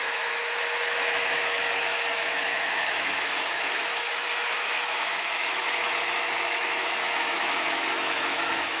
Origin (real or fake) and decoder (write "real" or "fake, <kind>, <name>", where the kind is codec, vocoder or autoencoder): fake, autoencoder, DAC-VAE